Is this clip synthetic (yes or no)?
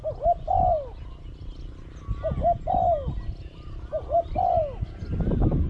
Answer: no